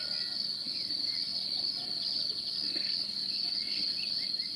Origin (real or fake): real